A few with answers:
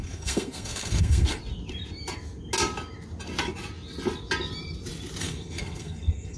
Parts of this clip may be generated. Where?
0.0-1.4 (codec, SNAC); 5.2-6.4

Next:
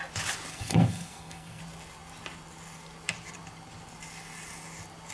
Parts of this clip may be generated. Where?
0.5-1.6 (codec, SNAC)

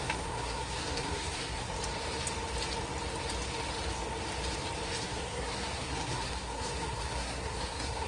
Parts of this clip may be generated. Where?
0.0-1.7 (codec, SNAC); 5.0-8.1

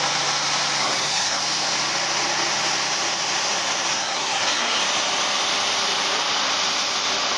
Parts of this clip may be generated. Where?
0.8-1.4 (codec, SNAC); 3.9-4.8